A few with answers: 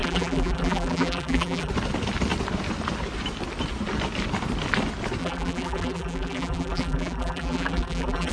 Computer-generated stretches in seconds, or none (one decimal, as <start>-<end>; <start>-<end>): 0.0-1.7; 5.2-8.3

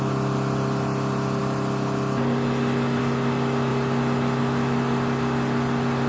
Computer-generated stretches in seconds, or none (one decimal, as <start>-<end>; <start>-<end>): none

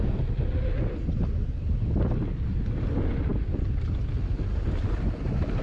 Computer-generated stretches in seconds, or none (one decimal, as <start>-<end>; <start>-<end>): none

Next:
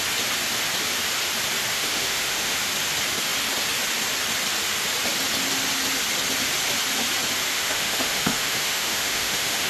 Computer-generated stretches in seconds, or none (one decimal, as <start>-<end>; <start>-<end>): 1.7-2.6; 7.5-9.7

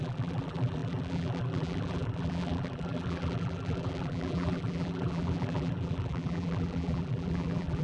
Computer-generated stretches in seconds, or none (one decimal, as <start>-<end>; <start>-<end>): 0.0-7.8

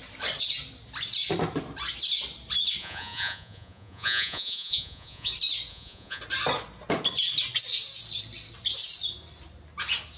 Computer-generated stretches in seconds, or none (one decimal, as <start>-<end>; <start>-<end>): 2.8-5.3; 5.7-6.2